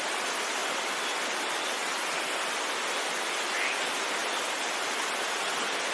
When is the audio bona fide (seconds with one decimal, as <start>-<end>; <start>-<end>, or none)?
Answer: 0.0-5.9